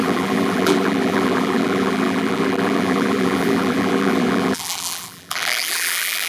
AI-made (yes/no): yes